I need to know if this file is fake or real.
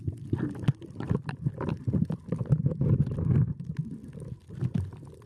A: real